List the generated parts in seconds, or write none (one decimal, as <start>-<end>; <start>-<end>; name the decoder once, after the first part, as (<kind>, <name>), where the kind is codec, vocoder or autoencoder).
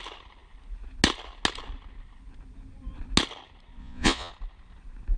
3.8-4.3 (vocoder, Vocos)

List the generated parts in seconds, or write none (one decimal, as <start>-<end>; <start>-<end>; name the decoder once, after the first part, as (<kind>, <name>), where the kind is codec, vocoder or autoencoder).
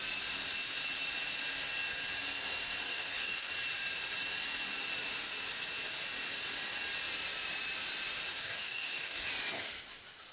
2.8-3.5 (codec, DAC); 8.4-9.3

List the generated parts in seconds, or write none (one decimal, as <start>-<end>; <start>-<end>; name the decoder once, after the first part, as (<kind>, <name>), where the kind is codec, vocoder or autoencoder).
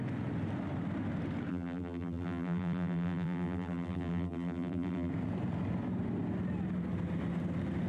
1.5-5.1 (vocoder, BigVGAN v2)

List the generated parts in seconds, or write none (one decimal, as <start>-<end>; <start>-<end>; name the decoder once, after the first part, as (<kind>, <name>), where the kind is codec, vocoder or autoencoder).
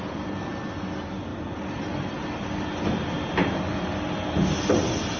none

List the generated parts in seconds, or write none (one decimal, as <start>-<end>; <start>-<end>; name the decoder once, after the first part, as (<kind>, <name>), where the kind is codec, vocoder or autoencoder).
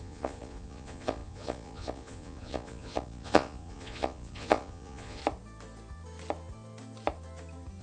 0.0-5.2 (vocoder, Vocos)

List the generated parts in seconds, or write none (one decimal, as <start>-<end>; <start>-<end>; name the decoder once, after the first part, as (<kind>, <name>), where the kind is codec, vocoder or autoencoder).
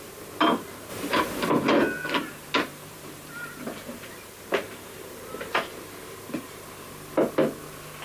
0.9-1.5 (vocoder, BigVGAN v2); 2.7-6.9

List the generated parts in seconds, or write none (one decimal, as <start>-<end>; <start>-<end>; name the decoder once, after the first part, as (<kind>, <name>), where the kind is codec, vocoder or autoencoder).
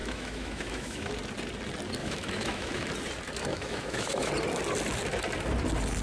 0.0-1.1 (autoencoder, DAC-VAE); 2.0-2.9; 3.5-4.3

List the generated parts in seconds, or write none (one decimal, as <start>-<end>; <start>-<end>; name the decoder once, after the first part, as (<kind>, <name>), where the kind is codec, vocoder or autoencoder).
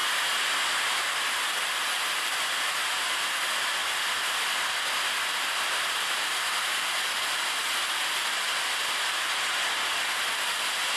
1.0-11.0 (vocoder, BigVGAN v2)